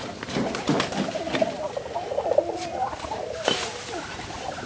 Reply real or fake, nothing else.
real